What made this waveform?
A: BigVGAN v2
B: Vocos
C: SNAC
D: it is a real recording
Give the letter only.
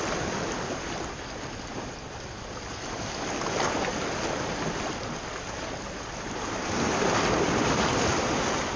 D